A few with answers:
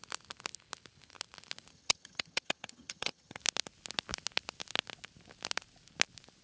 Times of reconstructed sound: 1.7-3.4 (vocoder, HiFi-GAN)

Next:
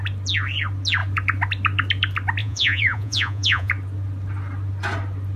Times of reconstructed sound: 2.4-3.7 (vocoder, Vocos)

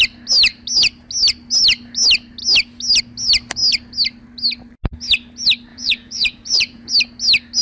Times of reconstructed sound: 5.7-6.9 (vocoder, Vocos)

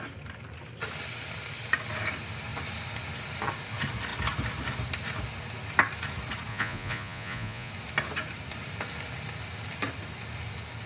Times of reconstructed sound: 6.5-7.7 (vocoder, Vocos)